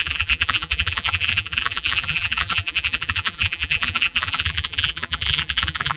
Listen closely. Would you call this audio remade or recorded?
remade